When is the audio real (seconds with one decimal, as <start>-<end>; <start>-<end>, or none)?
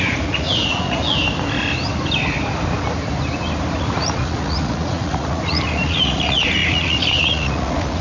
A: 1.0-3.8